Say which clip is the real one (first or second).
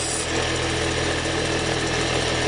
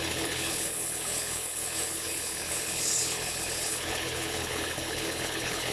first